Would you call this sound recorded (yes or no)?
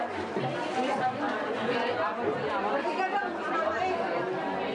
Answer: yes